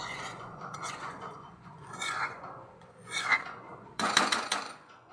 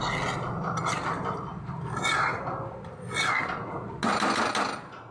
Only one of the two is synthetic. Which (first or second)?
first